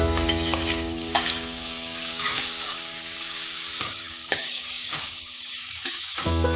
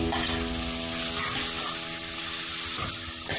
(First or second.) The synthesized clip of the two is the first